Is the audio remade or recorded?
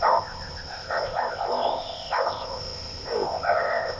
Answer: remade